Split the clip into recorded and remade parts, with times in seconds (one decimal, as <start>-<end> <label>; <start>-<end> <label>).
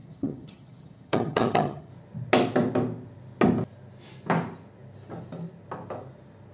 0.0-1.9 remade; 1.9-6.5 recorded